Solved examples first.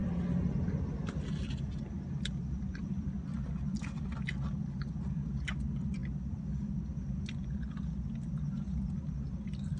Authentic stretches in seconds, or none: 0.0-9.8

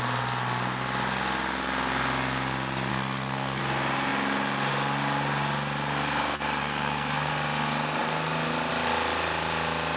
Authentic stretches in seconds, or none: 0.0-2.9; 3.6-6.6; 7.3-10.0

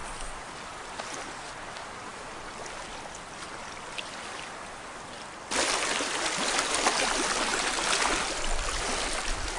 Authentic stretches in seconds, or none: 0.0-9.6

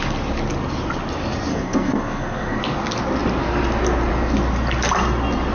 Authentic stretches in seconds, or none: 0.0-1.5; 2.6-5.5

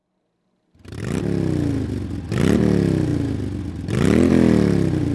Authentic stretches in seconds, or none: 0.0-5.1